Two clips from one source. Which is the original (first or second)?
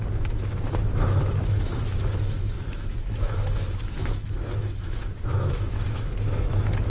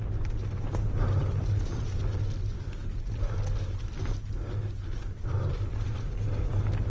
second